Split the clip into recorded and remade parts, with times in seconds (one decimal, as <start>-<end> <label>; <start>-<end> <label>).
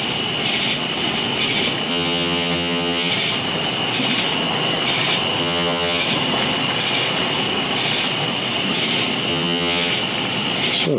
0.0-1.9 recorded; 1.9-3.1 remade; 3.1-5.4 recorded; 5.4-6.0 remade; 6.0-9.3 recorded; 9.3-9.9 remade; 9.9-11.0 recorded